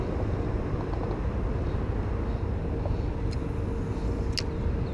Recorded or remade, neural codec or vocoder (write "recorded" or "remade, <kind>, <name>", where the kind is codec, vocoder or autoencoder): recorded